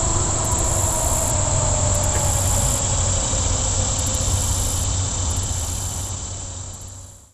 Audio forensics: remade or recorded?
recorded